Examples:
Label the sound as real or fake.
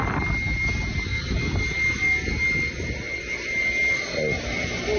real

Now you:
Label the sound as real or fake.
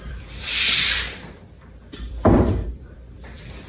fake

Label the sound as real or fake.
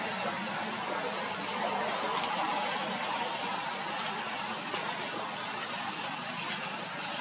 real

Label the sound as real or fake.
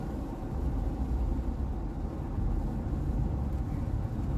real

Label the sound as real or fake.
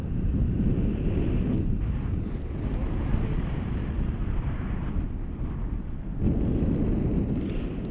real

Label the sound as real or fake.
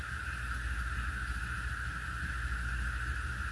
real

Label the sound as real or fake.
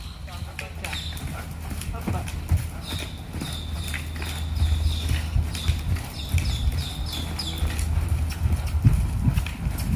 real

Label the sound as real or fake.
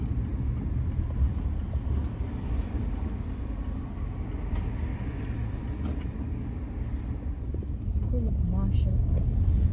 real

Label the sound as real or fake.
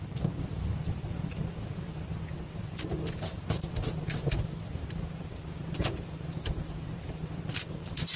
fake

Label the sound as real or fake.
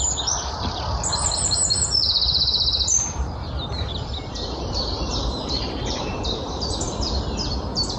fake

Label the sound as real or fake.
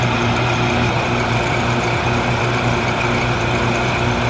fake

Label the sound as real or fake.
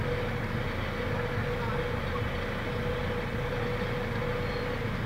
real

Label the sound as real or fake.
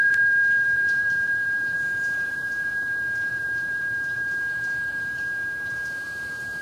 fake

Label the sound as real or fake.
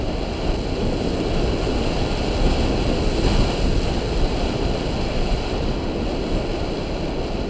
real